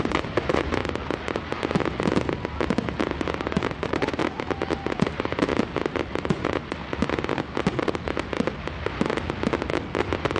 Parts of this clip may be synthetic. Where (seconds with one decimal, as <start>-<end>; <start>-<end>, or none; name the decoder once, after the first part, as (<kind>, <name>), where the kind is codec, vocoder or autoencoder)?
0.0-0.8 (vocoder, Vocos); 3.7-4.2; 4.9-5.5; 6.3-6.8; 10.0-10.4